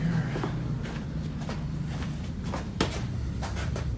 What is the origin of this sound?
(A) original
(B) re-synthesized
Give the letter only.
A